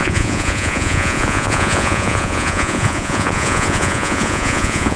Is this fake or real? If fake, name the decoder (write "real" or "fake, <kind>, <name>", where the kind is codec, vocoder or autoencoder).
fake, vocoder, Vocos